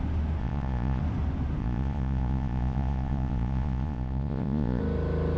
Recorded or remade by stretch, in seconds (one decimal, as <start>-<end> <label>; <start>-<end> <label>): 0.0-0.4 recorded; 0.4-1.0 remade; 1.0-1.6 recorded; 1.6-4.8 remade; 4.8-5.4 recorded